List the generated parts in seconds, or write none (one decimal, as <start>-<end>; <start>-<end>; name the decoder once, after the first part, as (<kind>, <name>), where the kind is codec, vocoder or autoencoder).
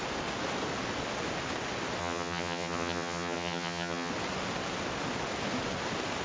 2.0-4.1 (vocoder, HiFi-GAN)